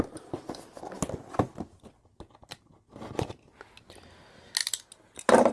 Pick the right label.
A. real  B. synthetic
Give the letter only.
A